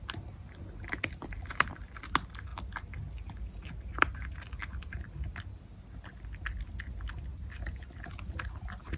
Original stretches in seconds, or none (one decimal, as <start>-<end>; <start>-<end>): 0.0-9.0